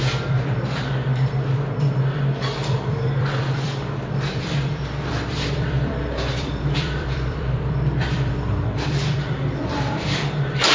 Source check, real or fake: fake